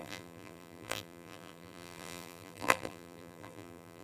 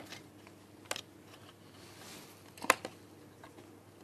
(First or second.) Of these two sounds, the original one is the second